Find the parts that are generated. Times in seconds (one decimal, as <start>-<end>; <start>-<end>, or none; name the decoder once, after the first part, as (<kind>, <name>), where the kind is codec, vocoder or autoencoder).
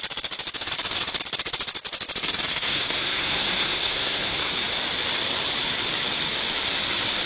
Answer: 2.5-4.5 (codec, SNAC)